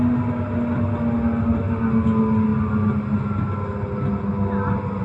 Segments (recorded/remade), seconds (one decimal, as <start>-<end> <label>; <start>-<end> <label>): 0.0-5.0 recorded